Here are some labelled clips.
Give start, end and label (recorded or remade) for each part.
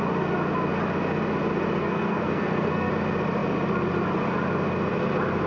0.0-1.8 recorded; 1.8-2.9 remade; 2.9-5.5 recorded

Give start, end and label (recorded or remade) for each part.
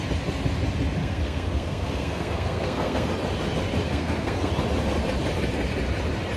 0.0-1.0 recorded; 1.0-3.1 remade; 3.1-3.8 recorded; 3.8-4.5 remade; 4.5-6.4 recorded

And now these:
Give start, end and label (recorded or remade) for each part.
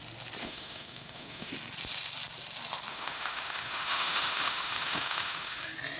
0.0-0.4 recorded; 0.4-1.5 remade; 1.5-2.9 recorded; 2.9-5.6 remade; 5.6-6.0 recorded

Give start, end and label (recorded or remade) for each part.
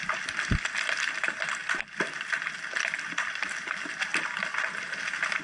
0.0-5.4 remade